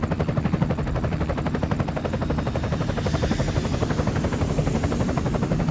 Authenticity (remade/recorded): recorded